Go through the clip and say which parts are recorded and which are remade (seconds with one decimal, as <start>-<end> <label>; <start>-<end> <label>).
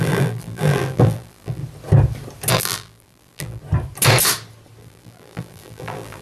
0.0-1.6 remade; 1.6-2.5 recorded; 2.5-3.6 remade; 3.6-4.8 recorded; 4.8-6.2 remade